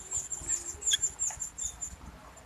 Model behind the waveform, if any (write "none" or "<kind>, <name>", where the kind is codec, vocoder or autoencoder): none